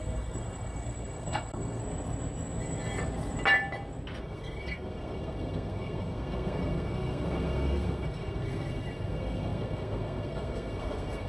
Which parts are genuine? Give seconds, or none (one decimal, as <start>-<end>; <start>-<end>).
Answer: 1.8-4.2